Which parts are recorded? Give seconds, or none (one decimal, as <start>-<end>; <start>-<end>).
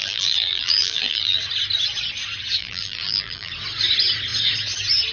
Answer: 1.4-2.6; 3.5-5.1